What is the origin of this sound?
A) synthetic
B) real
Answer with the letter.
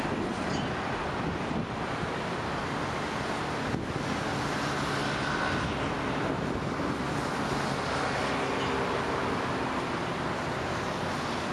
B